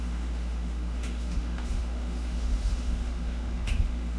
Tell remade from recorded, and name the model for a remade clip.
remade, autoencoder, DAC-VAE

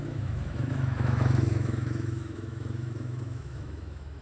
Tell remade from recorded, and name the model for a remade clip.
remade, autoencoder, DAC-VAE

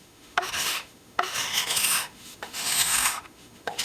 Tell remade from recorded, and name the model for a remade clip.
remade, autoencoder, DAC-VAE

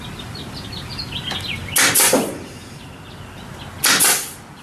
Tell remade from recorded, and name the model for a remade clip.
recorded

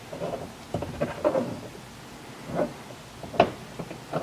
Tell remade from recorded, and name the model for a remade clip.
recorded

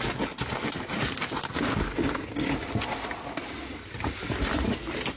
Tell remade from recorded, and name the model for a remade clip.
recorded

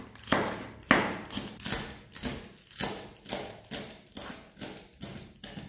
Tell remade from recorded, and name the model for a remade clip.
recorded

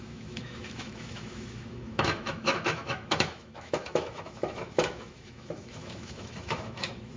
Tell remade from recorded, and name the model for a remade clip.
remade, autoencoder, DAC-VAE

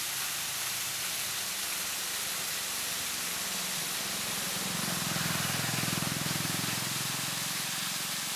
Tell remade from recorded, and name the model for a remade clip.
recorded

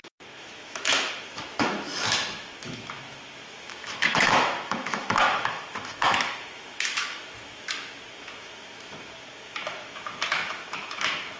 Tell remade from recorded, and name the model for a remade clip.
remade, autoencoder, DAC-VAE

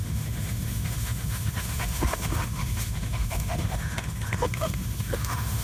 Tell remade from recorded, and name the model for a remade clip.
remade, autoencoder, DAC-VAE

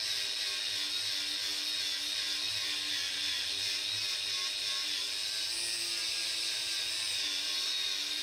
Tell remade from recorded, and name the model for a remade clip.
recorded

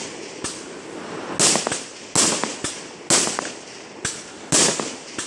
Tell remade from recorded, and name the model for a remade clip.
recorded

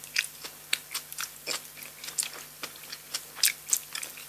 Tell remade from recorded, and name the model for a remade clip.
recorded